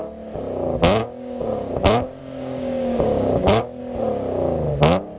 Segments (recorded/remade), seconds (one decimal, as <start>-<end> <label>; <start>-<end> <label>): 0.0-1.0 recorded; 1.0-1.7 remade; 1.7-2.2 recorded; 2.2-3.8 remade; 3.8-5.2 recorded